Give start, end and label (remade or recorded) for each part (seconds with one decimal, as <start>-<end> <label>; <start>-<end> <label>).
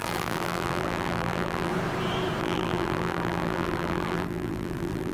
0.0-1.7 remade; 1.7-2.4 recorded; 2.4-5.1 remade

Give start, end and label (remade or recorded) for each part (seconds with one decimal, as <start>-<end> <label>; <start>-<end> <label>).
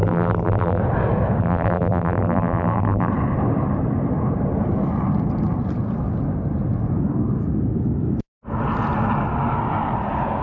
0.0-0.8 remade; 0.8-1.4 recorded; 1.4-3.1 remade; 3.1-10.4 recorded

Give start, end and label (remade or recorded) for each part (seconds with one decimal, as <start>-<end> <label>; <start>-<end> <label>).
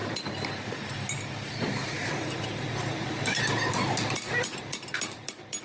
0.0-1.8 recorded; 1.8-3.7 remade; 3.7-5.6 recorded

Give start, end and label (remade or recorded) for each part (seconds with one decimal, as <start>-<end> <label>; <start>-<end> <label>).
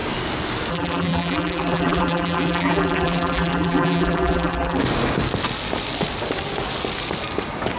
0.0-0.7 recorded; 0.7-4.8 remade; 4.8-7.8 recorded